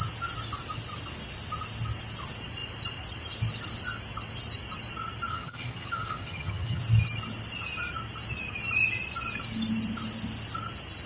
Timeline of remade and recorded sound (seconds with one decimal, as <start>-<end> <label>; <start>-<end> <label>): 0.0-5.3 recorded; 5.3-6.8 remade; 6.8-11.1 recorded